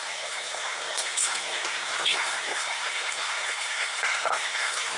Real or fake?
fake